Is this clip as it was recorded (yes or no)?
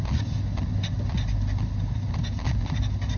yes